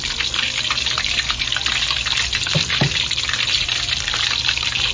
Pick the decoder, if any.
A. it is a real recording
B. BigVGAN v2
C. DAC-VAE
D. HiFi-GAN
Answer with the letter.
A